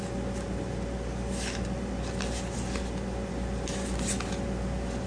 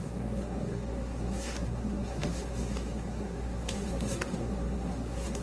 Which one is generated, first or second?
second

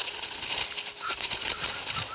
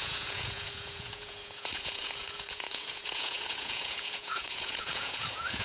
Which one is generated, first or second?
second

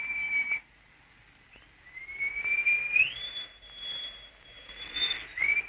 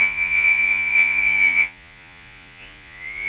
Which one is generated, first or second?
second